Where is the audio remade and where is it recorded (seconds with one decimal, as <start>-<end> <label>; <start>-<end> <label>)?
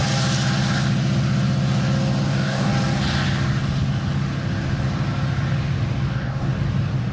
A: 0.0-2.3 recorded; 2.3-2.7 remade; 2.7-6.1 recorded; 6.1-6.5 remade; 6.5-7.1 recorded